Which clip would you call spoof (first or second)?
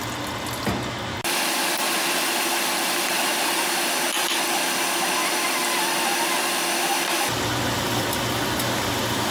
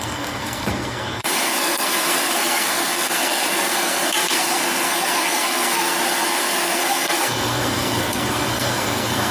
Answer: second